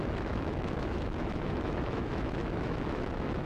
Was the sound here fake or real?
fake